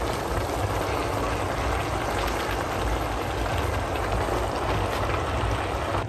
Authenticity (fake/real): real